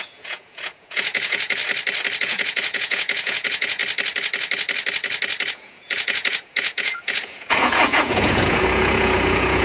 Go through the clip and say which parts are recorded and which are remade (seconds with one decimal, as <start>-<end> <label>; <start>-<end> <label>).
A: 0.0-1.6 remade; 1.6-2.2 recorded; 2.2-3.8 remade; 3.8-5.5 recorded; 5.5-9.6 remade